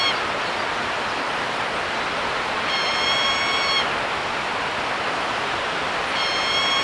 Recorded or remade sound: recorded